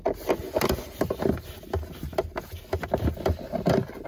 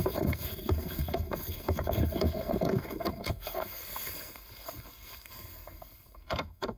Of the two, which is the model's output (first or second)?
second